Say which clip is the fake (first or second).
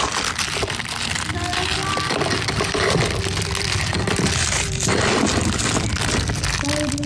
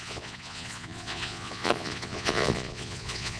second